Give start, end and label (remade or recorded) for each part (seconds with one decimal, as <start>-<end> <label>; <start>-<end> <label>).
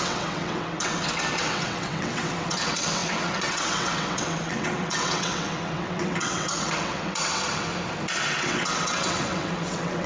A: 0.0-7.7 remade; 7.7-8.2 recorded; 8.2-10.1 remade